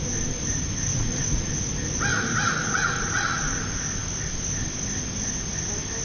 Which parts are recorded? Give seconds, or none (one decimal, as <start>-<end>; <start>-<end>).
0.0-0.9; 1.5-2.1; 3.6-6.0